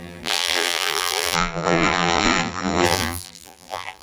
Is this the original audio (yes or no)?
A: no